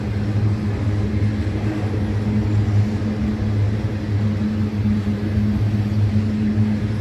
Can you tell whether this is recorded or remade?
recorded